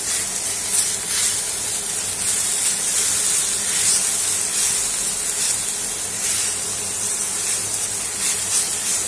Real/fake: real